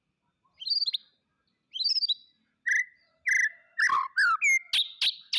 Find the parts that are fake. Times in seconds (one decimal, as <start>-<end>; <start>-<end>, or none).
none